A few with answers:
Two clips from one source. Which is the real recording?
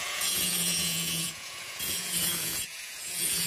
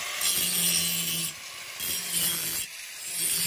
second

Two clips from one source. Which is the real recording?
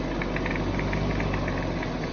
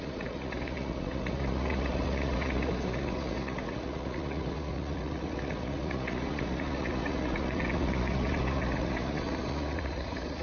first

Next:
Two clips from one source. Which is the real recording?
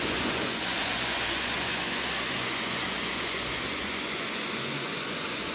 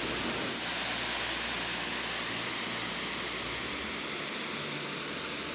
second